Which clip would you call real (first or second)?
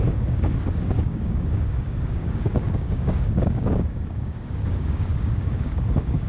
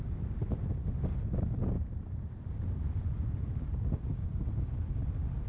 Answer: second